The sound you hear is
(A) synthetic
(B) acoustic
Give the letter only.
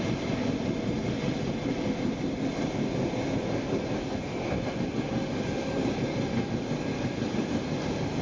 B